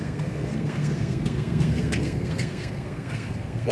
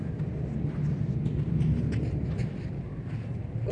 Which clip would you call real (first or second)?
second